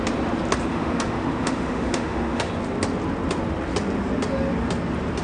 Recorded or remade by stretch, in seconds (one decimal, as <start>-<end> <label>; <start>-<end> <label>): 0.0-0.7 recorded; 0.7-2.5 remade; 2.5-5.2 recorded